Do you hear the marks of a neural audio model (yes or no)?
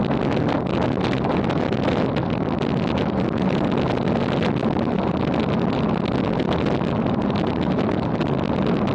no